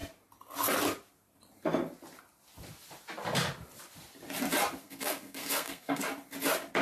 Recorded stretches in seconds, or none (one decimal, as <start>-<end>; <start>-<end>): 0.0-4.8; 6.0-6.8